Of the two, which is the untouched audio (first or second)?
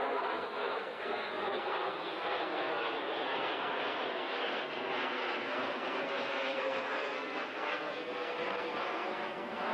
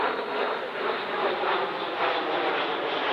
second